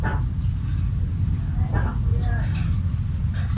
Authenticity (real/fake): real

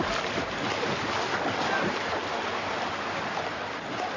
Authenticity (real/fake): real